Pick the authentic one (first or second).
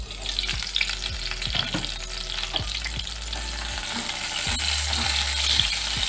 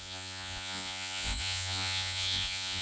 first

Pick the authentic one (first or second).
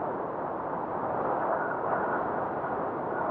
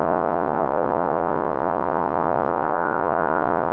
first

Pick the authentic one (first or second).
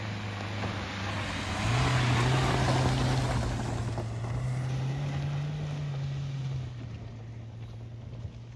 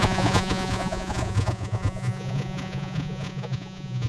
first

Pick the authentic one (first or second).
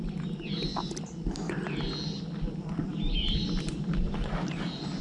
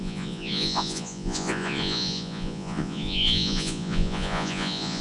first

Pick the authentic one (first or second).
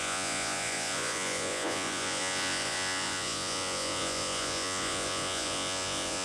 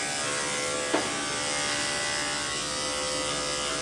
second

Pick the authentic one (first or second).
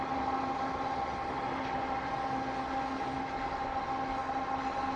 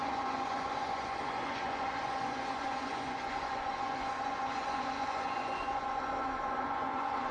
first